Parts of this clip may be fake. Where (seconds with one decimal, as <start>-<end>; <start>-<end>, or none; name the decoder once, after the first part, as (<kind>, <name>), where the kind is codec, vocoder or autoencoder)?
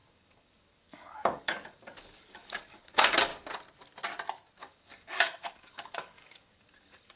0.0-3.3 (codec, DAC); 4.6-7.2